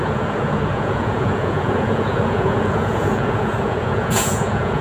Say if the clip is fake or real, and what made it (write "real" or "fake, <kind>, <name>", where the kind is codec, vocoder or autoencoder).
fake, vocoder, Vocos